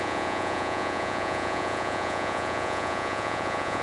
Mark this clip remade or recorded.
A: remade